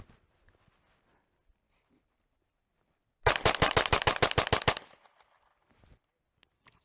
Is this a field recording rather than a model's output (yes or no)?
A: yes